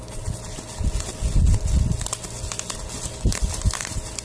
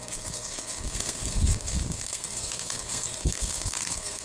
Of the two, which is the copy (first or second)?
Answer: second